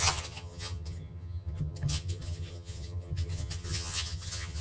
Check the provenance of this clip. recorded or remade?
remade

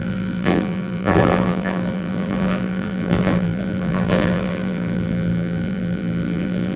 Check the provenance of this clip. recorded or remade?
remade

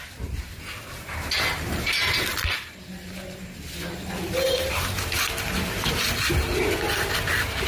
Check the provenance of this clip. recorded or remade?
recorded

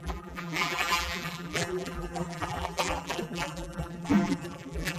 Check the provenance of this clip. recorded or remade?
remade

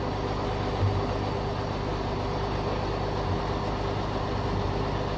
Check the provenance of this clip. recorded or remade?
recorded